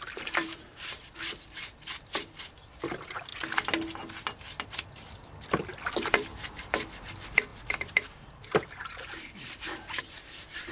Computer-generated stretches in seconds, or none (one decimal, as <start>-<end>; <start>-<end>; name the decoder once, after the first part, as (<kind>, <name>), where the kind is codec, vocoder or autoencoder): 0.0-3.3 (vocoder, BigVGAN v2); 5.9-10.7